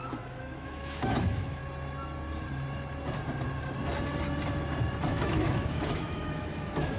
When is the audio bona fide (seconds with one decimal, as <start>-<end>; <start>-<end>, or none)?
1.6-5.1